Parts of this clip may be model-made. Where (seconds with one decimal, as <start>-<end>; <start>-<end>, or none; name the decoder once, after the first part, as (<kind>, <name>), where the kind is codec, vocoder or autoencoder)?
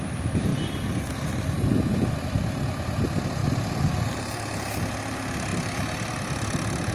3.4-4.7 (vocoder, BigVGAN v2)